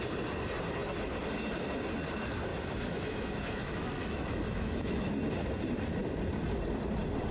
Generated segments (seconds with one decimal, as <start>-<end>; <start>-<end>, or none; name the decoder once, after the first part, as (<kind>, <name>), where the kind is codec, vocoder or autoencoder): 2.5-5.1 (autoencoder, DAC-VAE)